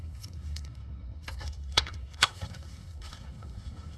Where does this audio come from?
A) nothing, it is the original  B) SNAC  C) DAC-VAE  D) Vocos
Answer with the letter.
B